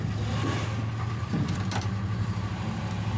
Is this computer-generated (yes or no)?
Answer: no